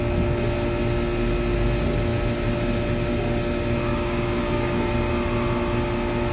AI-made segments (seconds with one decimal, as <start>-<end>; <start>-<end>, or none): 3.9-5.1